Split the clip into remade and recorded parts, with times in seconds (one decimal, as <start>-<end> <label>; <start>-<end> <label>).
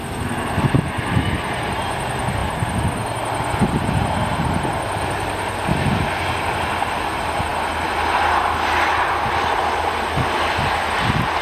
0.0-11.4 recorded